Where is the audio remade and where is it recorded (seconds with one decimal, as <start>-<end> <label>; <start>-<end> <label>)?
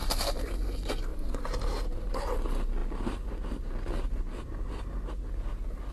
0.0-0.5 remade; 0.5-1.1 recorded; 1.1-2.1 remade; 2.1-5.9 recorded